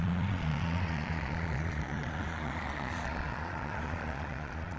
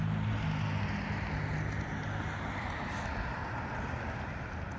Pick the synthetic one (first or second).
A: first